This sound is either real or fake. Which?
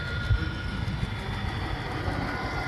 real